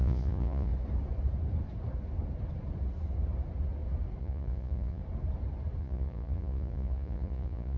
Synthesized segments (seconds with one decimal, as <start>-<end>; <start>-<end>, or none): 0.0-0.7; 4.2-5.0; 5.8-7.8